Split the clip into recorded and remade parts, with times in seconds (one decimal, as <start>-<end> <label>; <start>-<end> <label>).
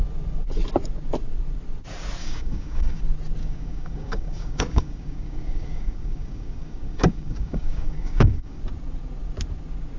0.0-2.2 recorded; 2.2-3.0 remade; 3.0-3.4 recorded; 3.4-8.6 remade; 8.6-10.0 recorded